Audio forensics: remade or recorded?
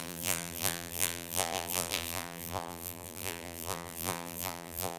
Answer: remade